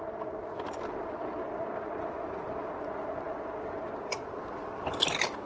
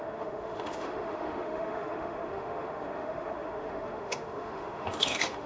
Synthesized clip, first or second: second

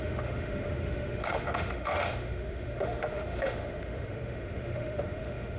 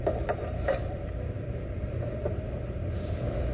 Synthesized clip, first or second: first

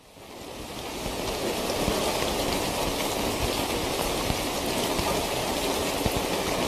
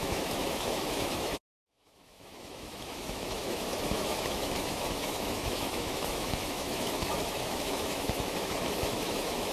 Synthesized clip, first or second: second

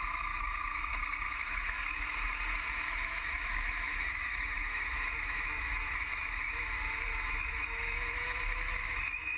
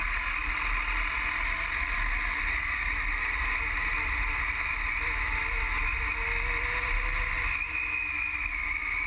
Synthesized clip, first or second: first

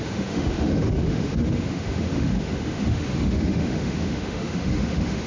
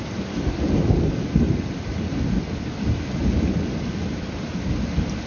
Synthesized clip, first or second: first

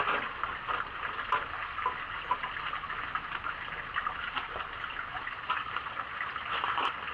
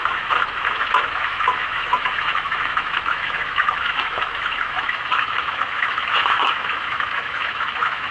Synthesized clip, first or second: second